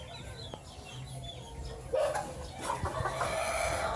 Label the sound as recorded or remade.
recorded